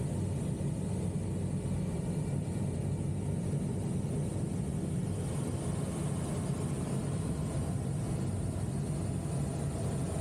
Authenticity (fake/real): real